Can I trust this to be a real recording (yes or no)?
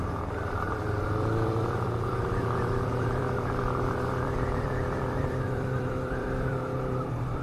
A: no